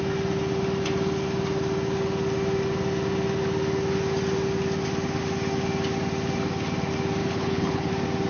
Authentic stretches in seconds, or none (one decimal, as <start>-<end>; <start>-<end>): 0.0-7.2; 7.9-8.3